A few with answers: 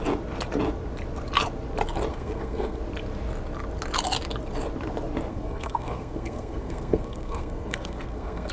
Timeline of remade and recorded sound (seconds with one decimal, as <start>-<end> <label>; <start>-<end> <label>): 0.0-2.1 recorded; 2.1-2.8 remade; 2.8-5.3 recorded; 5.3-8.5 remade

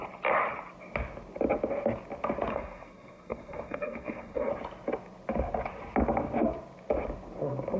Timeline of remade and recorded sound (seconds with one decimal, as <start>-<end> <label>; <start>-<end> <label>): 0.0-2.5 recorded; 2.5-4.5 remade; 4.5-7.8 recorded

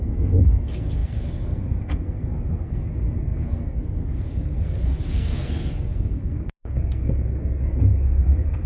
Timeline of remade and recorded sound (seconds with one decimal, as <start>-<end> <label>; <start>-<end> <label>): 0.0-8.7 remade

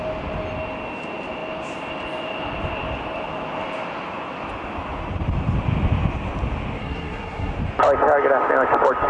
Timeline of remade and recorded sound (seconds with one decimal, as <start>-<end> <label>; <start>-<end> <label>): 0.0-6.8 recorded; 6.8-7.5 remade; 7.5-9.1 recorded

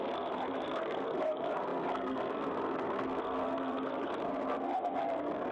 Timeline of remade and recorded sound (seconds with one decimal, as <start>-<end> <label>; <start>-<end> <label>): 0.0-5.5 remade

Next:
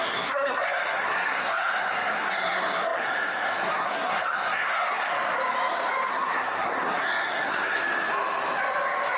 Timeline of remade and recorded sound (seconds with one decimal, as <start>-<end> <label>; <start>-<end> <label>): 0.0-5.1 remade; 5.1-6.1 recorded; 6.1-7.8 remade; 7.8-9.2 recorded

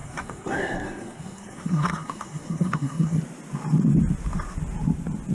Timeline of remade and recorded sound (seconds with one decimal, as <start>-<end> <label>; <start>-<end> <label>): 0.0-3.2 remade; 3.2-5.3 recorded

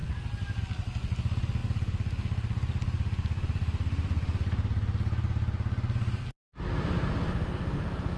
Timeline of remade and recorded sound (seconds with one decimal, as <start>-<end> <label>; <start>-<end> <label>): 0.0-8.2 recorded